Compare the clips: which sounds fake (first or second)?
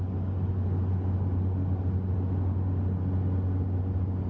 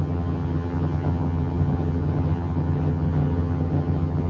second